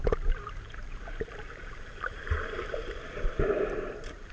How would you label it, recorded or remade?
remade